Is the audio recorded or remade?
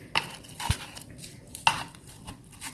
recorded